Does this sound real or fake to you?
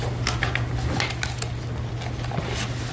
real